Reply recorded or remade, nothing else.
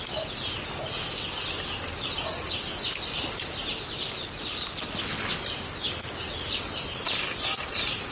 recorded